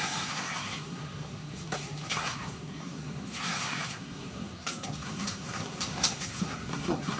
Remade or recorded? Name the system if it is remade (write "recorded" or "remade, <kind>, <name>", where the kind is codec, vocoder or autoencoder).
remade, codec, SNAC